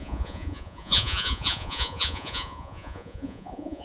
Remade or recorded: remade